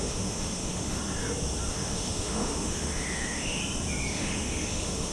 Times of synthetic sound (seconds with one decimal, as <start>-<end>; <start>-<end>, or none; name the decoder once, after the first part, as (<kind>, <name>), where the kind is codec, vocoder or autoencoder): 0.0-1.0 (autoencoder, DAC-VAE); 1.7-3.6; 4.1-5.1